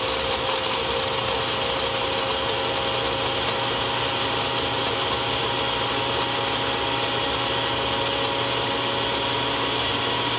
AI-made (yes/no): no